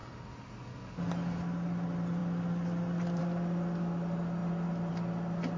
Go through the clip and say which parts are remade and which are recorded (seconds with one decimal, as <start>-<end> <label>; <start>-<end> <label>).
0.0-5.6 recorded